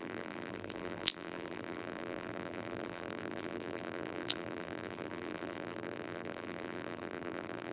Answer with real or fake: fake